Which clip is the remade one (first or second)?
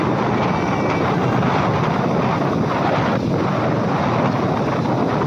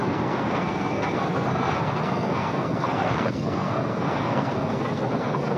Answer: second